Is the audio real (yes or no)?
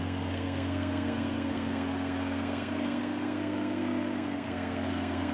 no